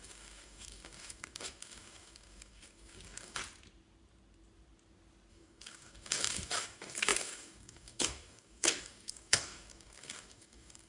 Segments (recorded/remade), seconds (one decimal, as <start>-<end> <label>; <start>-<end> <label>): 0.0-3.4 remade; 3.4-5.3 recorded; 5.3-10.9 remade